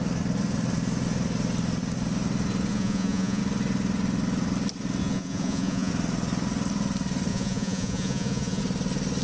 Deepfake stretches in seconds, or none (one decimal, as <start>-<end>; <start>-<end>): 2.7-3.4; 5.0-5.9; 7.3-8.6